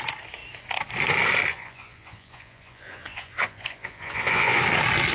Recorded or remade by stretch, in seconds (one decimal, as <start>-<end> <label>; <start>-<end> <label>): 0.0-1.5 recorded; 1.5-4.6 remade; 4.6-5.1 recorded